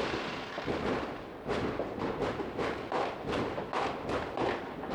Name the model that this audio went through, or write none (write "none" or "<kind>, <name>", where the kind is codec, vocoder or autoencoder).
vocoder, BigVGAN v2